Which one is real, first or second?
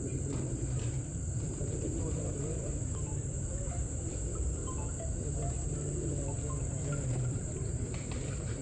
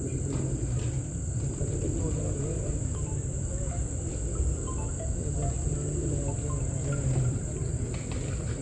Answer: second